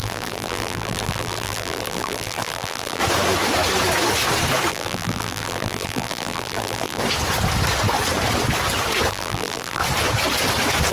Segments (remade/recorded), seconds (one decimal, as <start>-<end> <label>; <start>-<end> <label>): 0.0-3.0 remade; 3.0-4.7 recorded; 4.7-7.0 remade; 7.0-9.1 recorded; 9.1-9.8 remade; 9.8-10.9 recorded